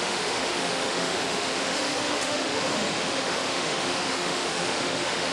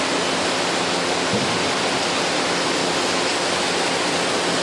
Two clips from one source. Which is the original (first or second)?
second